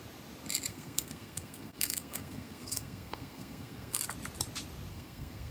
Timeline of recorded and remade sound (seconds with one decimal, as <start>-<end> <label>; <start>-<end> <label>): 0.0-0.7 recorded; 0.7-4.0 remade; 4.0-4.9 recorded; 4.9-5.5 remade